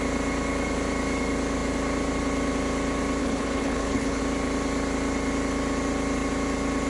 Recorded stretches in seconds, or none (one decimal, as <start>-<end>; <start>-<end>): 0.0-3.2; 4.2-6.9